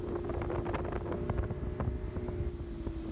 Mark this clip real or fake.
real